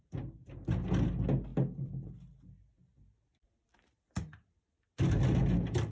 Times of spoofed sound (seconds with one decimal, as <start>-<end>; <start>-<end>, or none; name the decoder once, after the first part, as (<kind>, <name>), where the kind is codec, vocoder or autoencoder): none